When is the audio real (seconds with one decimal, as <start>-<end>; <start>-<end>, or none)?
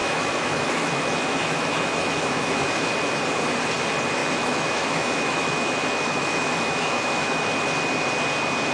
2.9-4.2; 7.5-8.7